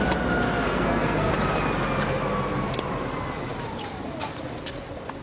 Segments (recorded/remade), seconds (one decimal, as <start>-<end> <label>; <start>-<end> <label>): 0.0-0.7 recorded; 0.7-1.3 remade; 1.3-5.2 recorded